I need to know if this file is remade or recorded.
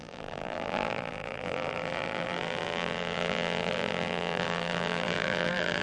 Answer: remade